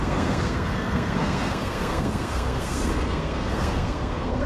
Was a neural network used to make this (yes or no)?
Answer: yes